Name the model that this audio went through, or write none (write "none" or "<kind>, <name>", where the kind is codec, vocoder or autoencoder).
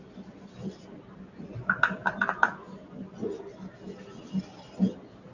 none